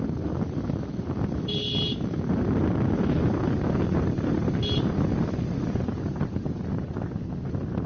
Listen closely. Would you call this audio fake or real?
real